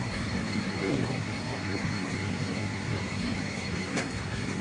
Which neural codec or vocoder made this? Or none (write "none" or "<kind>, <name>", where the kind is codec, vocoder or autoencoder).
codec, SNAC